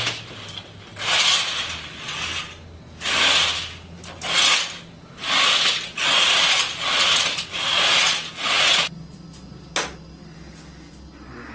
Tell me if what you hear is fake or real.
real